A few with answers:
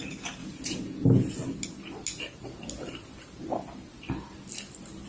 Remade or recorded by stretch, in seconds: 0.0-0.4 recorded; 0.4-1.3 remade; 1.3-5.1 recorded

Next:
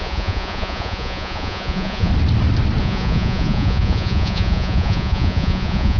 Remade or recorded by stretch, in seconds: 0.0-2.1 remade; 2.1-2.8 recorded; 2.8-6.0 remade

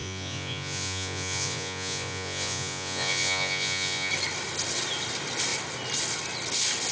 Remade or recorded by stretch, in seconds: 0.0-4.1 remade; 4.1-6.9 recorded

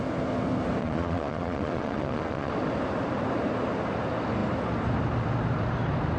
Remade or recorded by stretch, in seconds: 0.0-0.8 recorded; 0.8-2.5 remade; 2.5-6.2 recorded